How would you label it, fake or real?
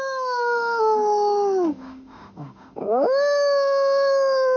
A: fake